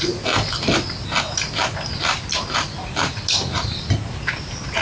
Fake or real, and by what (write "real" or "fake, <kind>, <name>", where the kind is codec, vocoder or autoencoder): real